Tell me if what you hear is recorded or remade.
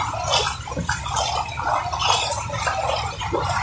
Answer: recorded